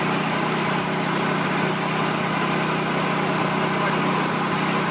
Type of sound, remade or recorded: recorded